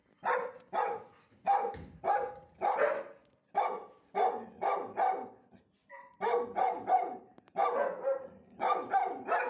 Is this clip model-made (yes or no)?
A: no